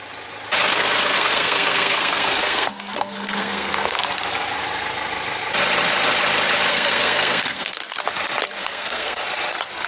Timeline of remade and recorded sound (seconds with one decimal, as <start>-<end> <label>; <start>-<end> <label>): 0.0-0.7 recorded; 0.7-4.0 remade; 4.0-6.7 recorded; 6.7-8.0 remade; 8.0-8.6 recorded; 8.6-9.2 remade; 9.2-9.9 recorded